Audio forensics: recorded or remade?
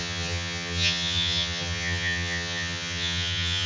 remade